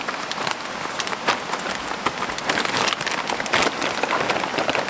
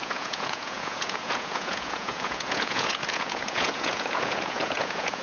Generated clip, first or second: second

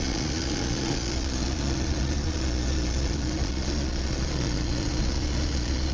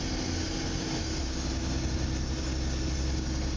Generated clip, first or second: first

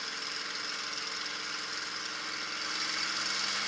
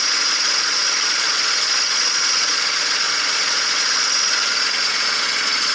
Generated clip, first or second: second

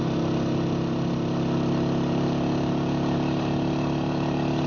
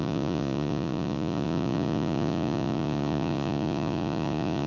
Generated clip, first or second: second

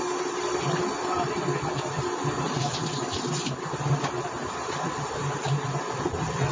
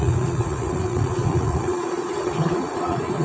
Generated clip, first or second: second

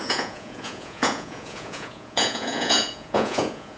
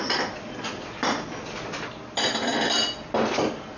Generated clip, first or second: first